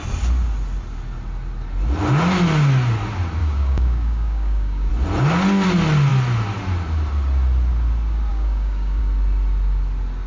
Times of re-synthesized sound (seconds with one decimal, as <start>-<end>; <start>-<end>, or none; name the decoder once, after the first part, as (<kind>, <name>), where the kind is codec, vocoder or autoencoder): 3.4-4.9 (codec, DAC); 8.3-9.0